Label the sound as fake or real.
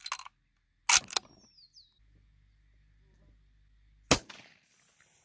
real